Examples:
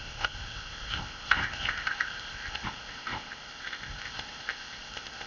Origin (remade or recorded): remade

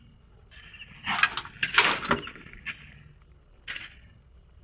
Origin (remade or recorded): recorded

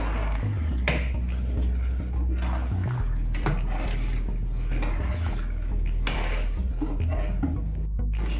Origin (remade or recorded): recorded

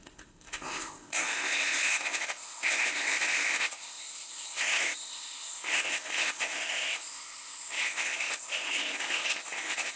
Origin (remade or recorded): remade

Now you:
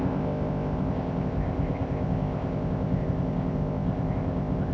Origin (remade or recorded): remade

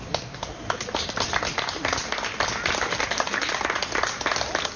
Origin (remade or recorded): recorded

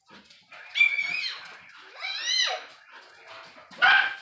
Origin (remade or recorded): recorded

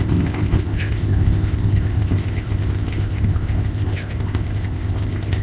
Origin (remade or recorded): remade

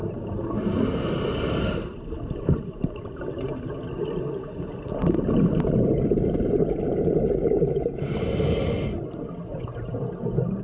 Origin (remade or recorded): recorded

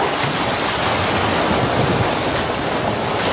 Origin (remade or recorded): recorded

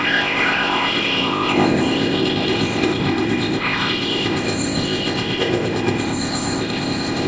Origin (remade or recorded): remade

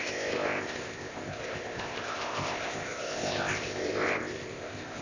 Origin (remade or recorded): remade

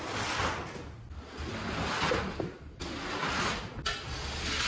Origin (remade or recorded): recorded